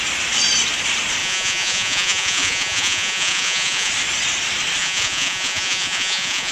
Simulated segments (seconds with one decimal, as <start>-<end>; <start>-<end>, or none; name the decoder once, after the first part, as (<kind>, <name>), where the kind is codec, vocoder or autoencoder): 1.2-3.9 (vocoder, Vocos); 4.8-6.5